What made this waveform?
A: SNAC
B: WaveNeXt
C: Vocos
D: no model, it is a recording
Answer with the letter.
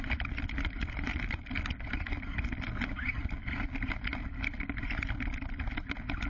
D